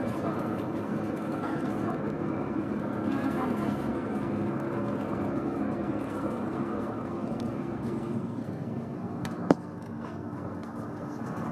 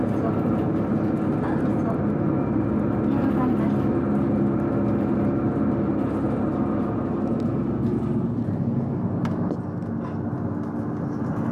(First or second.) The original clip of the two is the second